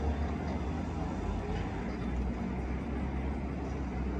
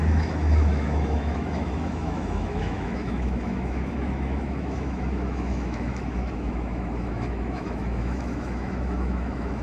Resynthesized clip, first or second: second